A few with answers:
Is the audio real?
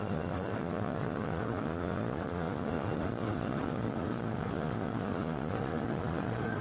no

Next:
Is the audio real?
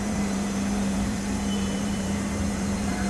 no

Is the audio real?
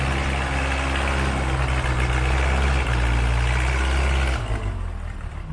yes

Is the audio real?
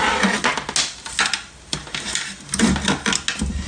yes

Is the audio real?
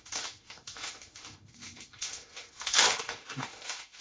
no